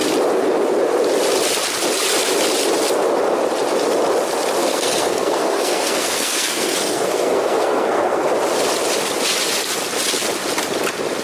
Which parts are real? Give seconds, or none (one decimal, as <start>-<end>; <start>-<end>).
0.0-4.6; 8.3-11.2